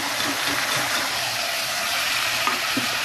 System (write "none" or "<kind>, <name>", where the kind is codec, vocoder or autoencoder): vocoder, BigVGAN v2